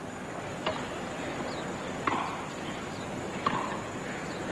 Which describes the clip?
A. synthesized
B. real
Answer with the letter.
B